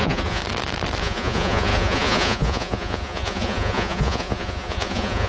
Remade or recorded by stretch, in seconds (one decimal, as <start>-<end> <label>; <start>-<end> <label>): 0.0-0.4 remade; 0.4-1.0 recorded; 1.0-5.3 remade